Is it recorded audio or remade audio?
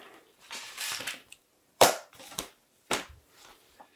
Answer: remade